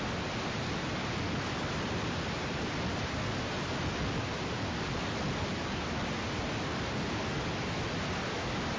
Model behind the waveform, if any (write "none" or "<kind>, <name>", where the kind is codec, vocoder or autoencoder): none